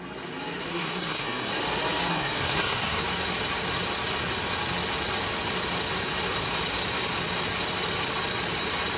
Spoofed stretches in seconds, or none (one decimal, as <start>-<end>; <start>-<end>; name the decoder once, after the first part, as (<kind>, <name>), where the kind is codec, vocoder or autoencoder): 0.7-1.5 (codec, SNAC); 2.1-3.0

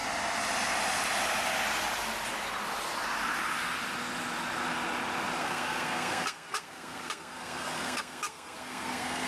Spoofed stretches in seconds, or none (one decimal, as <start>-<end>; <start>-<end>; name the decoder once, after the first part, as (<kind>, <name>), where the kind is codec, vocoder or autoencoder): 5.4-9.3 (codec, SNAC)

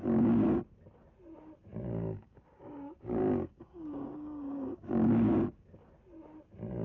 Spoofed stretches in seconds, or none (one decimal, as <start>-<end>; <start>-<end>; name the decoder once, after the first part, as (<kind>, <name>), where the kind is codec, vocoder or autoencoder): 0.0-0.6 (codec, DAC); 1.7-5.8

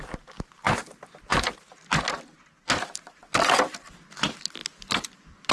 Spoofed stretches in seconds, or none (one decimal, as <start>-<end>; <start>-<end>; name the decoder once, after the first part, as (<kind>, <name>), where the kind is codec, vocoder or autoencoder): none

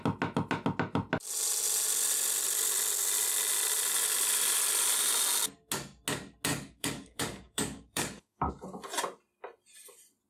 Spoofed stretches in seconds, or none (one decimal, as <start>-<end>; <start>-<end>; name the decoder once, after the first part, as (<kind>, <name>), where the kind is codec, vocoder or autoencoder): 6.5-8.5 (codec, DAC)

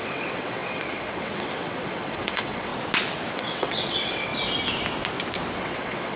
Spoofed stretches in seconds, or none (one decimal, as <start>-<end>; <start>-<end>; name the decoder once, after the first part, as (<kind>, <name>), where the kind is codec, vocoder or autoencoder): 0.0-2.7 (vocoder, WaveNeXt); 3.3-4.3; 5.6-6.2

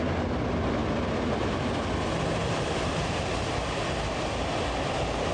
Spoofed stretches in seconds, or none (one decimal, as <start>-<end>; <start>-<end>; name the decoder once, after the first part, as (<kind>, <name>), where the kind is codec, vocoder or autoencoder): none